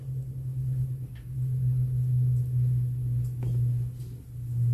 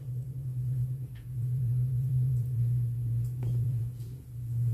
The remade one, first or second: second